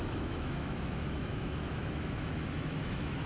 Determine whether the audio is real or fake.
fake